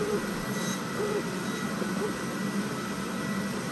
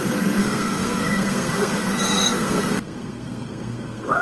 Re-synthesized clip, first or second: second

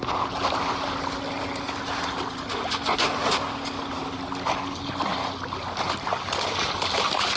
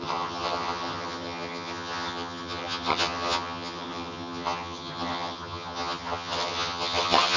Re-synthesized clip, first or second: second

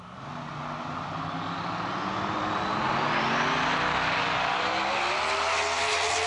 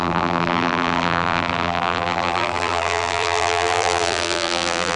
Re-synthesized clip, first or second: second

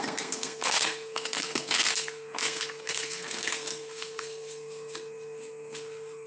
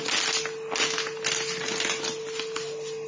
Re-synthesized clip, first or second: first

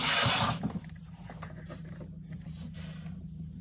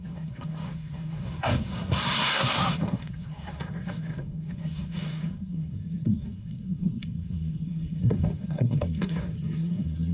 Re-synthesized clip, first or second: second